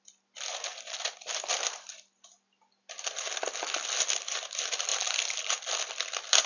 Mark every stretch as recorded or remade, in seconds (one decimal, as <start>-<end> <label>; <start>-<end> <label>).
0.0-6.5 recorded